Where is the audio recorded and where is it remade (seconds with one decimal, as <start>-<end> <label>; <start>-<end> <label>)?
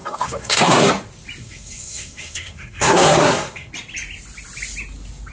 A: 0.0-0.9 remade; 0.9-1.4 recorded; 1.4-3.7 remade; 3.7-5.3 recorded